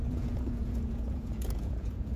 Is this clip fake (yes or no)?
yes